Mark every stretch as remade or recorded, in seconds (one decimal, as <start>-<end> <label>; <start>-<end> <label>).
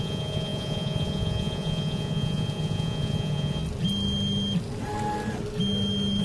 0.0-3.6 remade; 3.6-6.2 recorded